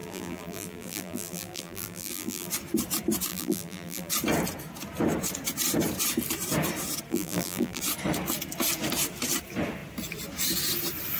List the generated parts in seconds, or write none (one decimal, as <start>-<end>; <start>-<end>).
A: 0.0-2.5; 3.3-4.1; 7.1-7.8